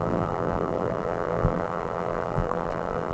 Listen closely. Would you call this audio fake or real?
fake